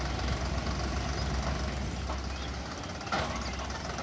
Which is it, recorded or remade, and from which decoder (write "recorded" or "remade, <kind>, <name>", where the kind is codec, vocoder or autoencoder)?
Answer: recorded